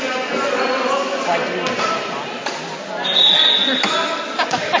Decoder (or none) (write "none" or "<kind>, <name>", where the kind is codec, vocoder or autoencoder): none